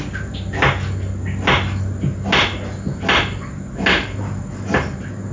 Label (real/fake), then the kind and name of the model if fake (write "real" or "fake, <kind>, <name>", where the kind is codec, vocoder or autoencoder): real